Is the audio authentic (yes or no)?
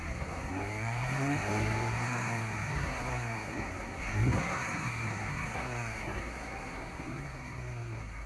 no